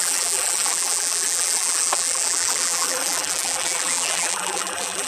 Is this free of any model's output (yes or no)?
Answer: no